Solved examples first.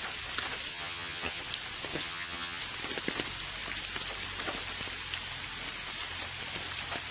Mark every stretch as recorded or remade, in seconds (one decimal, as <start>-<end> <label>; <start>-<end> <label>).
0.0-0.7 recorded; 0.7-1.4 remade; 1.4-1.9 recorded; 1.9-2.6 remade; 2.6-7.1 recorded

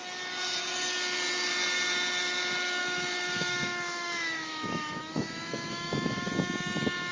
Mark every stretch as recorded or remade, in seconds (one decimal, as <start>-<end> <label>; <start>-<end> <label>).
0.0-2.8 recorded; 2.8-6.3 remade; 6.3-7.1 recorded

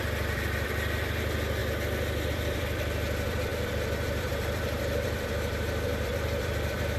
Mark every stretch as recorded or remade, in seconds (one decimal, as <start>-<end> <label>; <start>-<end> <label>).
0.0-1.6 remade; 1.6-2.3 recorded; 2.3-7.0 remade

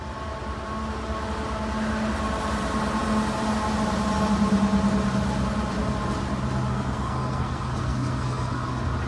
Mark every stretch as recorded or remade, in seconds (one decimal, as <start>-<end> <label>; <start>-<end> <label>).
0.0-6.7 recorded; 6.7-8.7 remade; 8.7-9.1 recorded

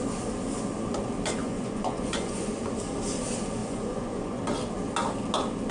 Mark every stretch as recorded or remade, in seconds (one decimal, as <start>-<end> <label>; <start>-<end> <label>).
0.0-1.4 recorded; 1.4-2.5 remade; 2.5-3.6 recorded; 3.6-4.4 remade; 4.4-5.7 recorded